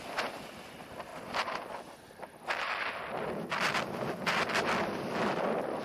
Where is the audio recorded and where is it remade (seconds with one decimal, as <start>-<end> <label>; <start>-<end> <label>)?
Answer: 0.0-5.8 recorded